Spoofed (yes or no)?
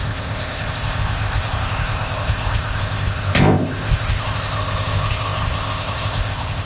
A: yes